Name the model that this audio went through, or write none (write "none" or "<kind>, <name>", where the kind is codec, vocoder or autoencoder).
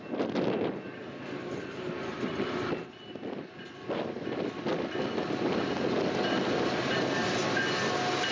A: none